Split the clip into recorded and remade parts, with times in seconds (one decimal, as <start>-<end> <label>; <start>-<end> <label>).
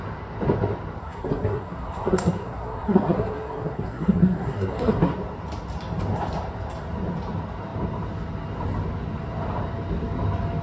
0.0-1.0 recorded; 1.0-5.1 remade; 5.1-10.6 recorded